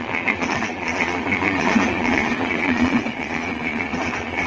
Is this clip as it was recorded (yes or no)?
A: no